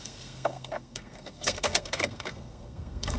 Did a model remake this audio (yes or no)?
yes